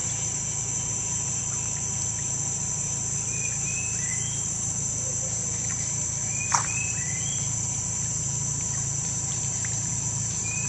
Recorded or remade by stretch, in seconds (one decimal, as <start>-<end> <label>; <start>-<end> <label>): 0.0-10.7 remade